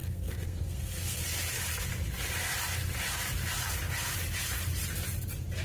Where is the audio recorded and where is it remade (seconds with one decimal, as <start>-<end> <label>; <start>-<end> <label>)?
0.0-1.2 remade; 1.2-5.6 recorded